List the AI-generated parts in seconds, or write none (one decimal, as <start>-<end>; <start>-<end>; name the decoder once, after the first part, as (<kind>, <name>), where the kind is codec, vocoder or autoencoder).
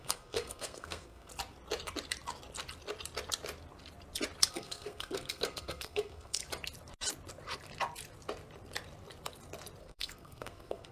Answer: 0.0-1.3 (codec, SNAC); 4.5-6.4; 9.8-10.9